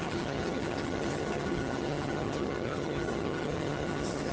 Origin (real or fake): fake